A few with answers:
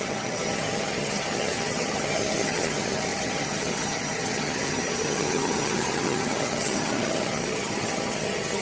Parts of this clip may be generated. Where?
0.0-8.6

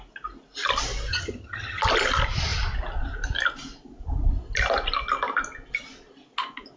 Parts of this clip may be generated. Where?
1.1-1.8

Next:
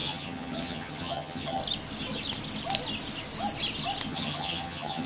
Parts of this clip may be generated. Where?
0.0-1.6; 4.1-5.1

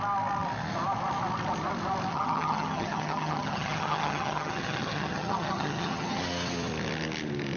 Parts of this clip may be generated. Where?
2.1-6.2